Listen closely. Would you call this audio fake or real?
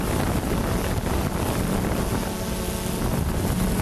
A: real